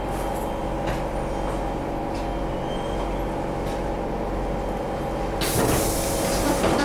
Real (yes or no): yes